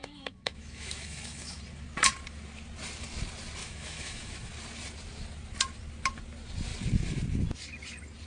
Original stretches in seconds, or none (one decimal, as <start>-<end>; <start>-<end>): 1.6-3.6; 4.5-8.3

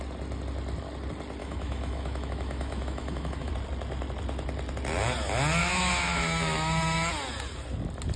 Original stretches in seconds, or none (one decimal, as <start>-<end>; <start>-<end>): 0.0-1.4; 3.5-5.6; 7.1-8.2

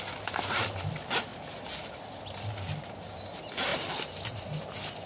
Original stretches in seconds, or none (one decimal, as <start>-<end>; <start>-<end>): 0.0-5.1

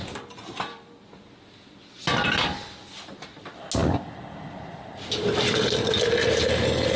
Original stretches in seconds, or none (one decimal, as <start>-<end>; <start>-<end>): 0.0-7.0

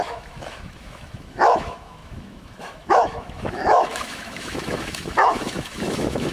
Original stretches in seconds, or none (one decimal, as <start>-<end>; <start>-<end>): none